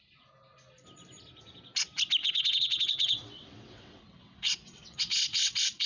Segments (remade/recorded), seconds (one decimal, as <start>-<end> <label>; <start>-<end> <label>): 0.0-2.2 recorded; 2.2-5.9 remade